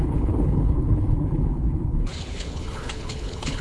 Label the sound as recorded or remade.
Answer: remade